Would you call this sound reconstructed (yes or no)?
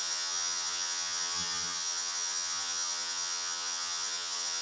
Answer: yes